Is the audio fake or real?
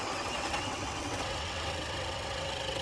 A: fake